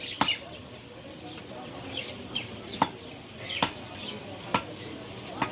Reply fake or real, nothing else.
real